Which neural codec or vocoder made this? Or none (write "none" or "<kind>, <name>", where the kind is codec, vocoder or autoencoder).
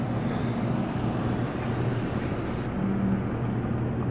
none